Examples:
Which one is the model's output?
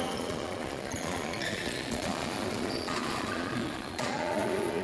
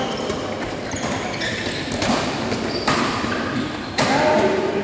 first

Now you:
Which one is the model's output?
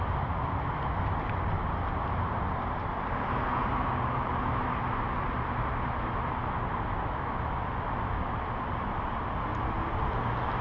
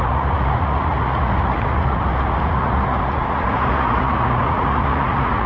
second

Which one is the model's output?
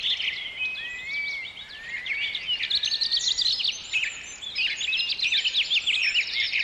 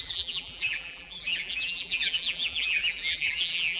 second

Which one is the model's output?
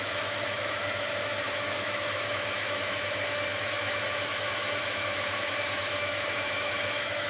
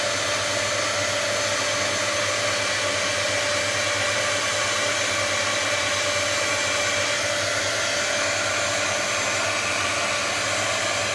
first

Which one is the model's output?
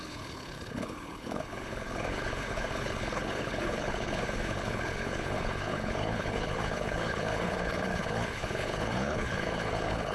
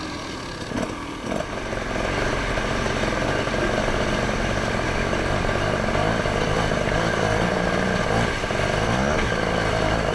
first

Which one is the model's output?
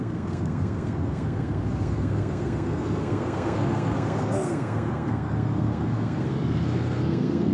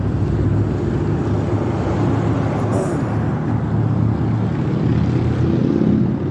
first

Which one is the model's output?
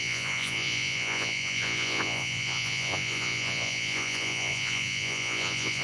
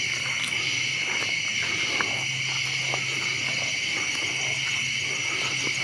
first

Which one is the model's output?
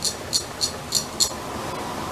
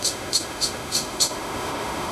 second